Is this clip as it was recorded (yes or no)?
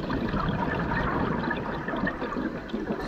no